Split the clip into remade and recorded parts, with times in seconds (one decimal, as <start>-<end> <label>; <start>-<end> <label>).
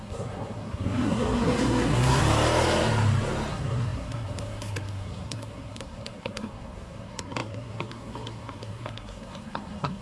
0.0-2.2 remade; 2.2-3.5 recorded; 3.5-10.0 remade